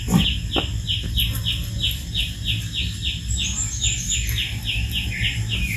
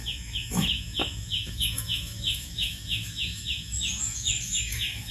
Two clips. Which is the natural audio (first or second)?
first